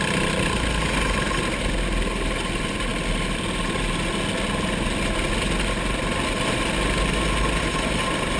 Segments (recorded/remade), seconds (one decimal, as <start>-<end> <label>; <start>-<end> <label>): 0.0-8.4 recorded